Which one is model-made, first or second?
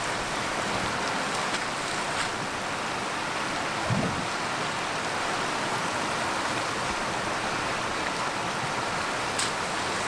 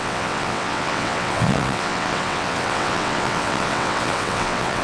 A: second